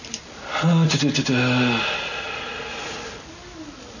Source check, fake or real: real